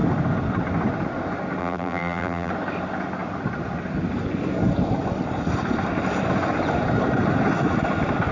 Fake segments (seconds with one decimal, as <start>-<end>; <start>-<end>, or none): 1.6-2.5